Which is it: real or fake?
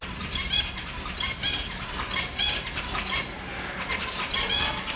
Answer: real